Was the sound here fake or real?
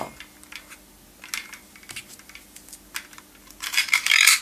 real